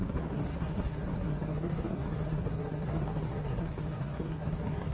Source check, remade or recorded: remade